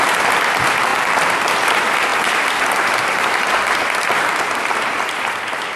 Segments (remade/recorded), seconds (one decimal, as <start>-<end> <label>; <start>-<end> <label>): 0.0-0.9 recorded; 0.9-1.5 remade; 1.5-5.8 recorded